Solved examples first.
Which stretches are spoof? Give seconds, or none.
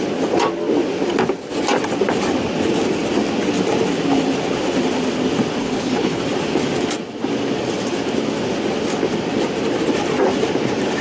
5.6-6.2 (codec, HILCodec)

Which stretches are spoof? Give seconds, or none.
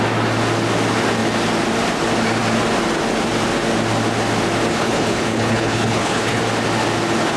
4.7-6.4 (codec, HILCodec)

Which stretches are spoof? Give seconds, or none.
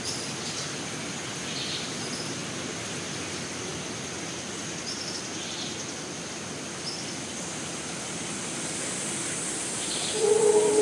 none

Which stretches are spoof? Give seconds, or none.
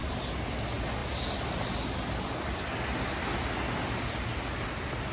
none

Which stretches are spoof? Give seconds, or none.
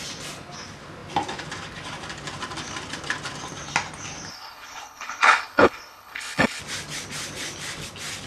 4.3-6.6 (codec, HILCodec)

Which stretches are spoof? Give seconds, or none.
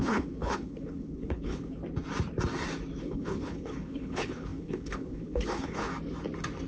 0.0-1.8 (codec, HILCodec); 3.0-5.9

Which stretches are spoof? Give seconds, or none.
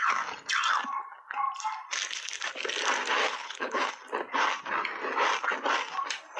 3.2-3.9 (codec, HILCodec)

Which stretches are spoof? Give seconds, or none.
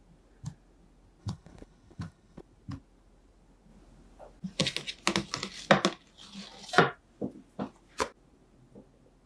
1.2-2.4 (codec, HILCodec)